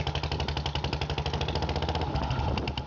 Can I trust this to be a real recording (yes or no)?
yes